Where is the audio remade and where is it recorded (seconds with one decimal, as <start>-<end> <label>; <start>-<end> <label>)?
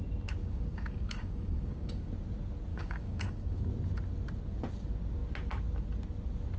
0.0-0.4 recorded; 0.4-2.1 remade; 2.1-2.7 recorded; 2.7-3.6 remade; 3.6-6.6 recorded